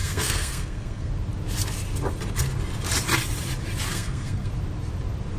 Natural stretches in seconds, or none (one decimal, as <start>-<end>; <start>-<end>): 1.1-3.9; 4.5-5.4

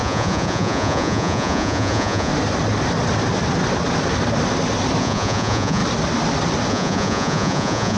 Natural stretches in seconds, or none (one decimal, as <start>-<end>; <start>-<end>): 2.3-5.0; 5.8-6.7

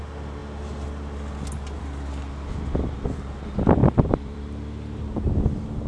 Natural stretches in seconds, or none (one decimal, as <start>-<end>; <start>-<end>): 0.0-3.8; 5.0-5.9

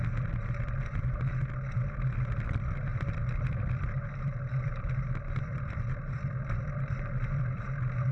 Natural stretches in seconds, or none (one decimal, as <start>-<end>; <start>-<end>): 0.0-2.9

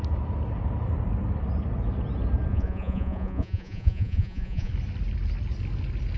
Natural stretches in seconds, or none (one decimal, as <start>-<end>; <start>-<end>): 0.0-2.5; 4.7-6.2

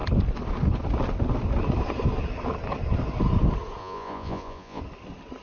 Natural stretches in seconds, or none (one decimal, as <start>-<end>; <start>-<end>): 0.0-3.8; 4.8-5.4

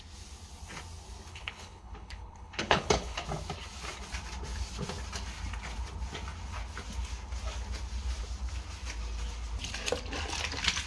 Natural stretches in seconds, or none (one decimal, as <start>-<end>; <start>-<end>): 0.0-1.3; 3.2-10.9